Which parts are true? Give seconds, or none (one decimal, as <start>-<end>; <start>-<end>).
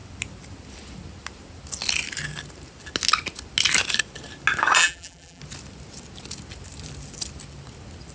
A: 0.0-4.8; 5.4-8.1